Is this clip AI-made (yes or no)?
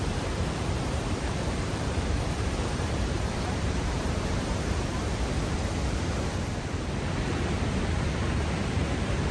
yes